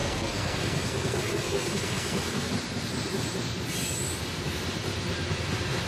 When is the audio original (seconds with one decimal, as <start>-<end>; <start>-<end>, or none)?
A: 2.5-5.9